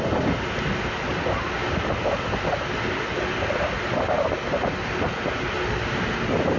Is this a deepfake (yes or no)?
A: no